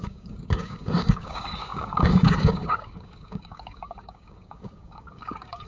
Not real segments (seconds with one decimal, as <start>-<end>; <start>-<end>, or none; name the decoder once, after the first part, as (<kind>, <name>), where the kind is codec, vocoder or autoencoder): 0.0-5.7 (codec, DAC)